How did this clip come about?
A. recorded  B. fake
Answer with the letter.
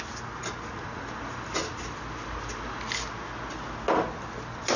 A